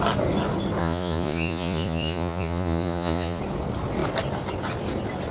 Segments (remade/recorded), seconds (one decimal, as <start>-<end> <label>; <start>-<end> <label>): 0.0-0.8 recorded; 0.8-3.4 remade; 3.4-5.3 recorded